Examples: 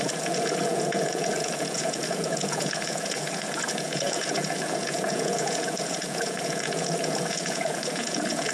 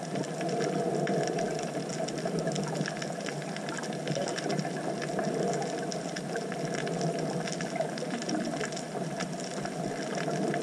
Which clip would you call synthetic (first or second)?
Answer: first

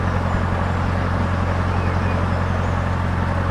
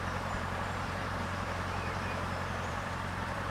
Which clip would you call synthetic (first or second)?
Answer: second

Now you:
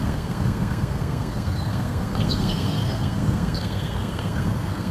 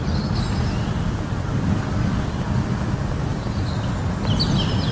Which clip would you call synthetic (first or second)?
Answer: first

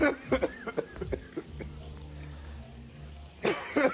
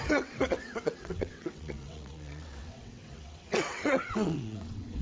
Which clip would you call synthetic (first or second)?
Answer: second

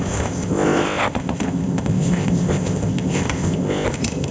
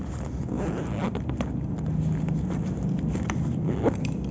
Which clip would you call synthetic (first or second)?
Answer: first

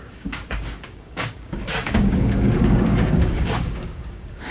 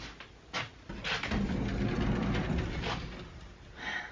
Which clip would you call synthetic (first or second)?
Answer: first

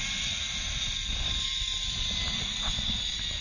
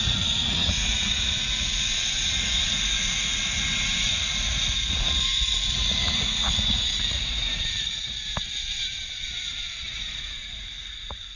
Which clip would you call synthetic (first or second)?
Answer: second